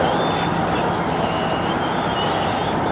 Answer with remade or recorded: recorded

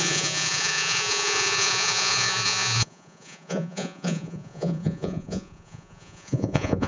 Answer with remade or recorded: remade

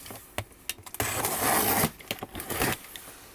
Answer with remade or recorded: recorded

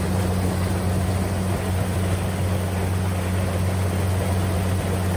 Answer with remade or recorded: recorded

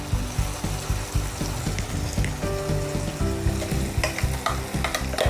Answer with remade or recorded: recorded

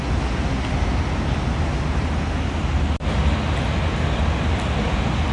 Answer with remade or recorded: recorded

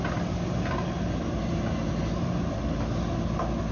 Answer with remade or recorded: recorded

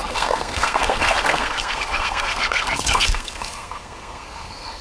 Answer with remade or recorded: remade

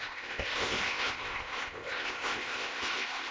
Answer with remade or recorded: remade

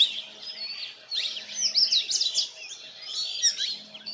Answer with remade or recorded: recorded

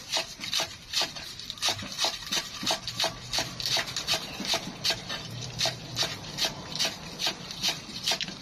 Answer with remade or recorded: remade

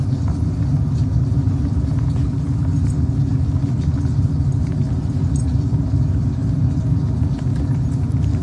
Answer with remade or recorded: recorded